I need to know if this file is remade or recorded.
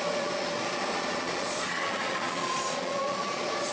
remade